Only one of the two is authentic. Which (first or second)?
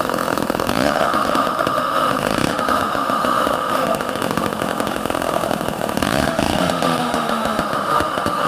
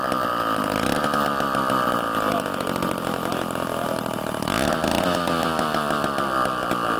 second